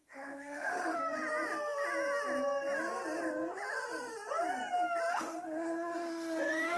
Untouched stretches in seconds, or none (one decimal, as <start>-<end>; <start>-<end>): 1.0-5.1